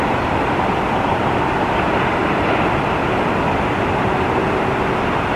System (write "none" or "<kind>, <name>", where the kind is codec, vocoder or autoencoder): none